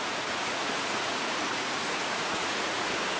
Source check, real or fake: fake